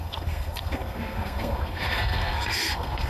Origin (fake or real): fake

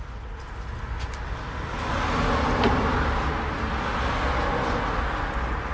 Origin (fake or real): real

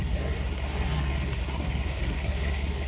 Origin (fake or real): fake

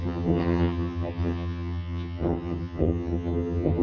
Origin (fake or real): fake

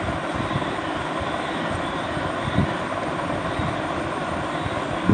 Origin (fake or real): real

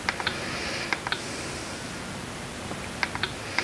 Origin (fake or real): real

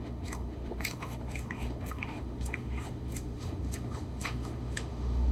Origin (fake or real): fake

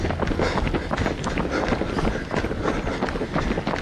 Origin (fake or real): real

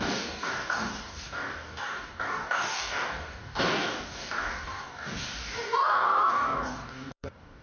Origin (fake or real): fake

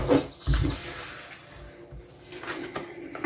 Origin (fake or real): real